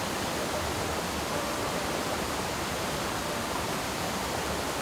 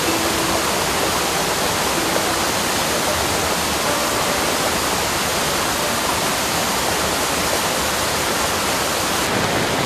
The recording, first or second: second